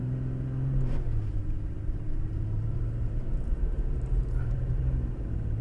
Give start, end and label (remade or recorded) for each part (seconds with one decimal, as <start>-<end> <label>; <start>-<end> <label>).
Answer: 0.0-1.4 recorded; 1.4-4.8 remade; 4.8-5.6 recorded